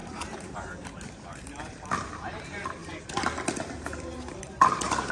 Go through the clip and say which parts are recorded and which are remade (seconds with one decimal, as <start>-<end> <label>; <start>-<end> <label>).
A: 0.0-2.8 remade; 2.8-4.4 recorded; 4.4-5.1 remade